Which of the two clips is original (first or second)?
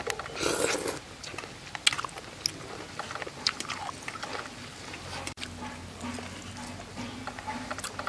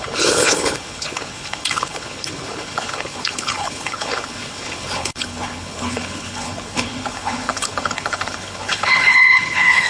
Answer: first